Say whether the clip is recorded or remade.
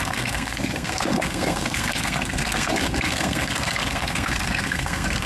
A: remade